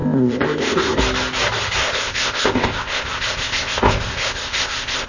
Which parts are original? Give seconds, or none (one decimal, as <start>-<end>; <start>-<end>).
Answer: 1.0-1.8